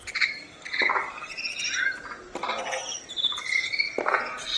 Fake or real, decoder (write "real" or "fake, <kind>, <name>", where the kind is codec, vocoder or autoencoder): real